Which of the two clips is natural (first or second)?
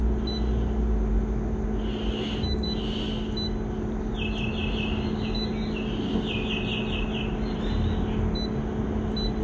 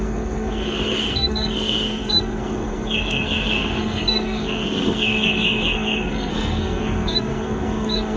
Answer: first